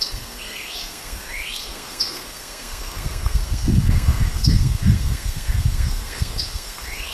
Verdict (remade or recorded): remade